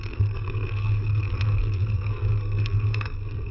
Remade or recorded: remade